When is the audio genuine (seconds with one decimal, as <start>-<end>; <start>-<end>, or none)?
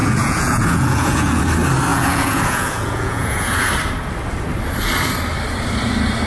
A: 1.4-1.9; 3.7-6.3